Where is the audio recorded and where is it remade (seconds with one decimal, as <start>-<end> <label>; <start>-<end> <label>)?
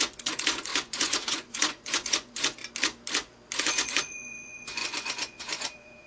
0.0-2.6 remade; 2.6-3.6 recorded; 3.6-6.1 remade